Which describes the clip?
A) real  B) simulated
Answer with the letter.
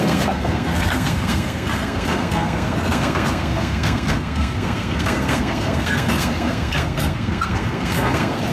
B